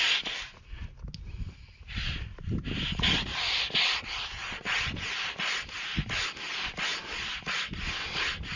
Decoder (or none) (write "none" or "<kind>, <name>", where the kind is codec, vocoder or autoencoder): none